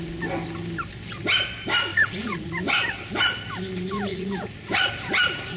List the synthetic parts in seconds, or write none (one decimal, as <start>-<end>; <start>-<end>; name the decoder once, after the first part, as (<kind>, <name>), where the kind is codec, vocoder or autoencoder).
1.9-2.5 (vocoder, Vocos); 4.1-4.7